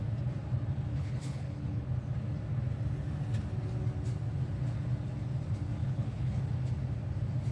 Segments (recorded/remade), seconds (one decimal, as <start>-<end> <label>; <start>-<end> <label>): 0.0-0.9 recorded; 0.9-1.9 remade; 1.9-5.8 recorded; 5.8-6.4 remade; 6.4-7.5 recorded